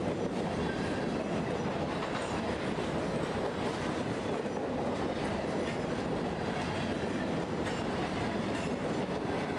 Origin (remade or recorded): recorded